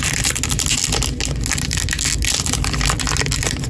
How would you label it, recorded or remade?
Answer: recorded